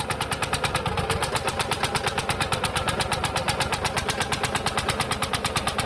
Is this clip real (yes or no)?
yes